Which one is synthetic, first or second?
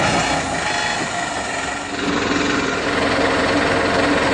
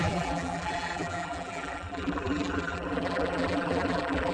second